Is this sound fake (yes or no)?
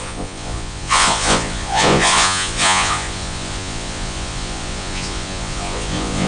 yes